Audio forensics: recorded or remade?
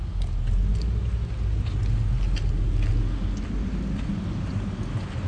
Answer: recorded